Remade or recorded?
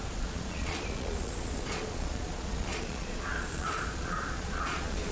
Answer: remade